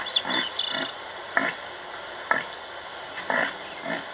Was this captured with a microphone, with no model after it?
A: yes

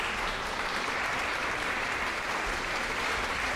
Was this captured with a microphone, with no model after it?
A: no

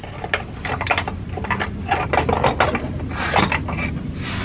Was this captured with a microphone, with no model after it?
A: yes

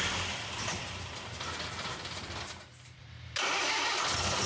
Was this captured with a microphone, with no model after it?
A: no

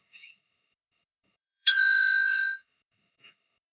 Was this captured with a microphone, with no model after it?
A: no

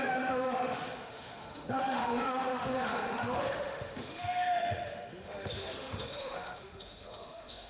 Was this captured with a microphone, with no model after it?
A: no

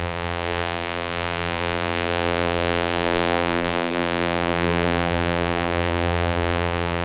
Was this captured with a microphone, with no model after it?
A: no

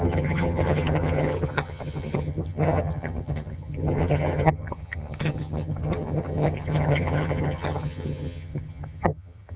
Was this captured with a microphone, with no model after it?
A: no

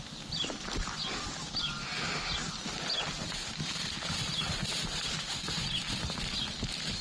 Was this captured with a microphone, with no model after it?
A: yes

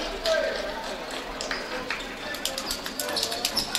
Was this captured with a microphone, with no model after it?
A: yes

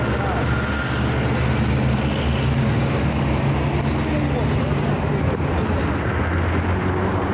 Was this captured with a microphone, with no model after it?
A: yes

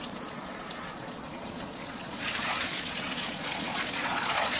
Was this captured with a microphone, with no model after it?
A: no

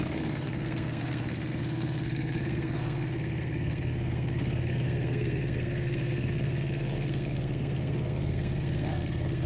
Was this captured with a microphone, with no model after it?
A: no